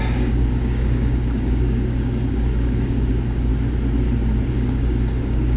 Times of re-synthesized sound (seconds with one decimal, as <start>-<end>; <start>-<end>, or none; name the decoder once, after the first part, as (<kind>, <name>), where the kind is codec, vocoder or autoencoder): 0.0-3.5 (codec, DAC); 4.5-5.6